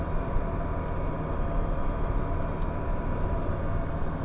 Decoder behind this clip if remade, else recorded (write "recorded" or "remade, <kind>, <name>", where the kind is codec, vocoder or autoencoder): remade, vocoder, BigVGAN v2